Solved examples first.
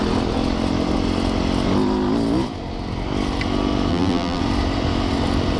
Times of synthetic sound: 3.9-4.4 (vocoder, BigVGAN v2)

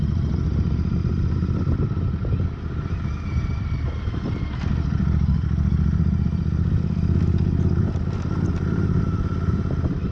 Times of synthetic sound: 1.1-4.4 (vocoder, BigVGAN v2)

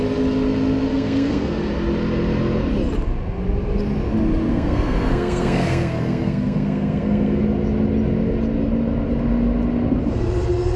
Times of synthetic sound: 0.9-1.7 (codec, SNAC); 4.5-7.4

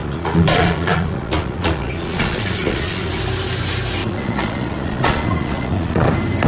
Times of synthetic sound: 0.0-3.1 (vocoder, Vocos); 4.0-6.1

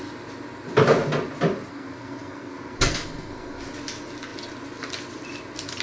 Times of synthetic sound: 1.7-3.7 (codec, SNAC)